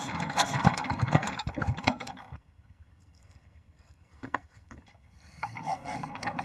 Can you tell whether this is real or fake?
fake